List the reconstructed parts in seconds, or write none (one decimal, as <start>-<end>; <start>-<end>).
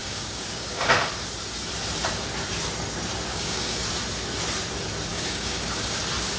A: 0.0-0.8; 3.3-3.8; 5.1-6.0